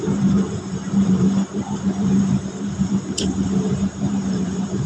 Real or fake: fake